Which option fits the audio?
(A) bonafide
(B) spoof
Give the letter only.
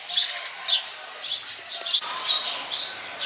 A